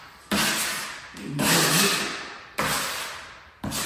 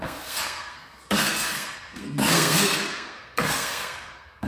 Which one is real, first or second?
first